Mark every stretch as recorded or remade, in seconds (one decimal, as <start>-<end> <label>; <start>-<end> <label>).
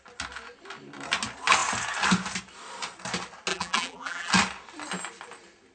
0.0-3.5 recorded; 3.5-4.3 remade; 4.3-5.7 recorded